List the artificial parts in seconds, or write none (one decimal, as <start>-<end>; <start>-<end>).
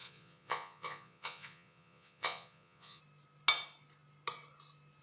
0.0-3.0